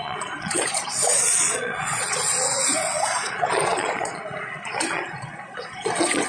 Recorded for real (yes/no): no